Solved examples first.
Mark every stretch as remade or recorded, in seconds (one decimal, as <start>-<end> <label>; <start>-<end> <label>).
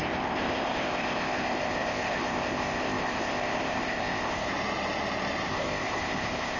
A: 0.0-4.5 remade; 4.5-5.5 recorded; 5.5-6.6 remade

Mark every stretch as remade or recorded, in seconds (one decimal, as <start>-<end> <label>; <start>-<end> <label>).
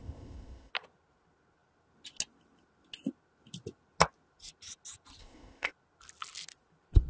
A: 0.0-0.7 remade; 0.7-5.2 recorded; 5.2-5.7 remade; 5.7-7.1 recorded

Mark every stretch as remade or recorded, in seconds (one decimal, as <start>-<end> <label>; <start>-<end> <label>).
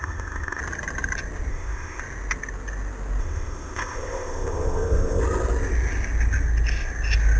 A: 0.0-0.6 remade; 0.6-1.5 recorded; 1.5-2.0 remade; 2.0-3.2 recorded; 3.2-5.2 remade; 5.2-7.4 recorded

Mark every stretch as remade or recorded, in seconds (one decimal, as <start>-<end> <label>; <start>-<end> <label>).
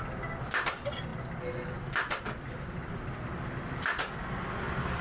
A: 0.0-5.0 recorded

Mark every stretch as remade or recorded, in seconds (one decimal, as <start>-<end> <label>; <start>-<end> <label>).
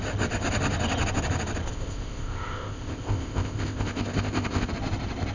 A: 0.0-1.7 recorded; 1.7-4.7 remade; 4.7-5.3 recorded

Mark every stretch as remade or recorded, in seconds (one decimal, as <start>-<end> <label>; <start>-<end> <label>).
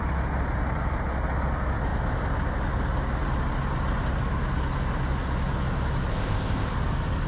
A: 0.0-6.1 recorded; 6.1-6.7 remade; 6.7-7.3 recorded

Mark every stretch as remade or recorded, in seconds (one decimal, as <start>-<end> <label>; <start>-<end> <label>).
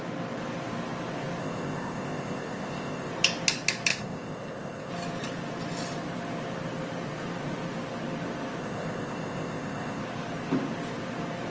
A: 0.0-1.4 recorded; 1.4-3.1 remade; 3.1-3.9 recorded; 3.9-4.9 remade; 4.9-8.6 recorded; 8.6-10.0 remade; 10.0-11.5 recorded